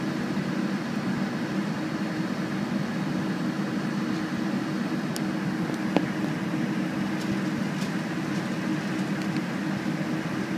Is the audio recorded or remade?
recorded